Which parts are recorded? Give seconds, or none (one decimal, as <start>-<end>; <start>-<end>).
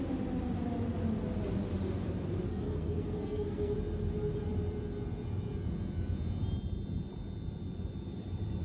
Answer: 0.0-2.5; 3.8-8.6